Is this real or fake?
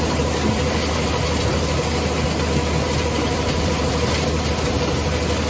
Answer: real